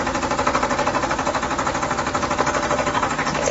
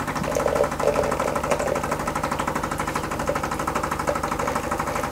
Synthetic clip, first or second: second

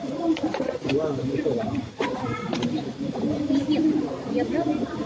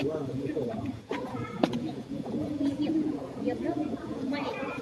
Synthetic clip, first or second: second